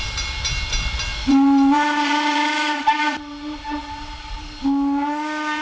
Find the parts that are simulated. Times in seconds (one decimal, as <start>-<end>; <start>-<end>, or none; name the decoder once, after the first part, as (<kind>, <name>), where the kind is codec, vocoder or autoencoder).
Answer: 1.2-4.6 (vocoder, BigVGAN v2)